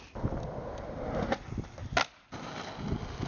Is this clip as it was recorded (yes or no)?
yes